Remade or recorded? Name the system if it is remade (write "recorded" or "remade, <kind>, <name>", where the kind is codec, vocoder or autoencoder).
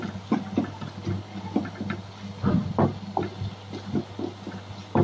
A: recorded